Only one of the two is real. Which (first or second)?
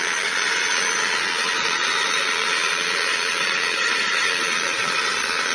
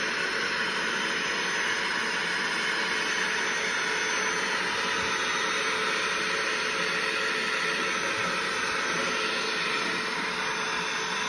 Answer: second